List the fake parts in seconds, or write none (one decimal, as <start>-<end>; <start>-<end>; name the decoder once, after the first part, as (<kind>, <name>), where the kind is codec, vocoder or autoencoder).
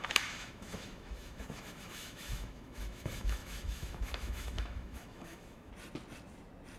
0.0-5.7 (autoencoder, DAC-VAE)